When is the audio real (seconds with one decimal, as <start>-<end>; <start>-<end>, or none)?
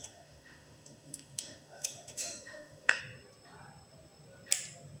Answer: 3.0-5.0